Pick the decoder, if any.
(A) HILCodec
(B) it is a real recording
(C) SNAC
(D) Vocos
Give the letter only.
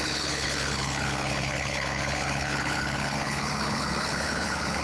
A